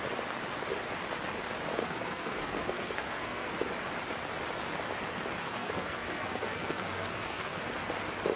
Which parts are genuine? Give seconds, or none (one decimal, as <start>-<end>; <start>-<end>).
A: 0.0-1.7; 3.5-5.4; 7.6-8.4